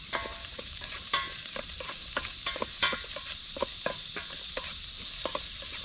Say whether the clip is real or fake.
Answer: fake